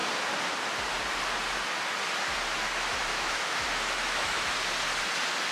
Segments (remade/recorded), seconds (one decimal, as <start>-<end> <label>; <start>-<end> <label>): 0.0-3.1 recorded; 3.1-4.5 remade; 4.5-5.5 recorded